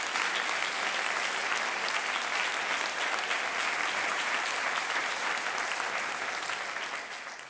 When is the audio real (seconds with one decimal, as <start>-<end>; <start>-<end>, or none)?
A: 0.0-4.1; 5.5-7.5